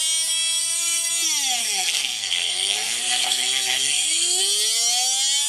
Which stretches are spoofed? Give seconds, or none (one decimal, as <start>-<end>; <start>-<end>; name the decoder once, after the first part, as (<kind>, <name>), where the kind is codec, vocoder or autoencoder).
0.6-1.1 (codec, SNAC); 1.6-4.4